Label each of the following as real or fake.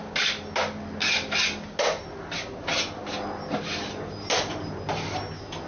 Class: real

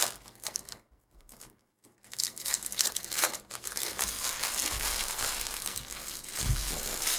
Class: fake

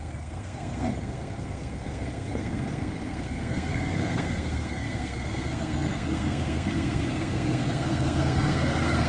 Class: fake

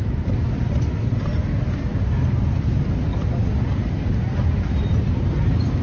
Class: real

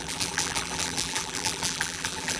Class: fake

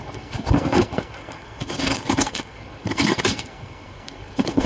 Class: fake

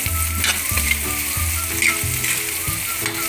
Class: real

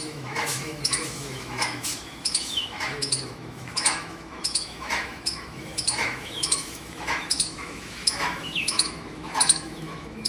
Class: fake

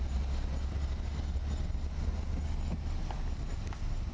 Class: real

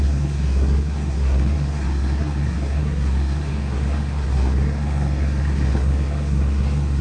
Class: fake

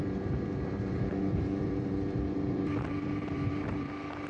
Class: fake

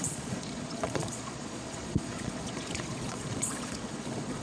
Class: fake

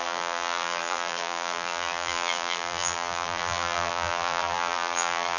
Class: fake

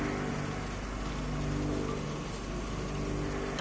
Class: real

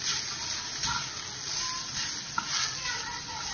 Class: real